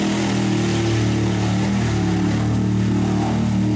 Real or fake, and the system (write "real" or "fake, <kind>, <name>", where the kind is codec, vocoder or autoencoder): real